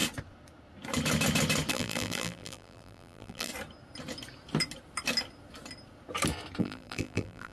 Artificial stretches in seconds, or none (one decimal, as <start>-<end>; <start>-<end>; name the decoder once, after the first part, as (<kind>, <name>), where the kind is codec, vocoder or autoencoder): 1.7-3.5 (vocoder, BigVGAN v2); 6.6-7.5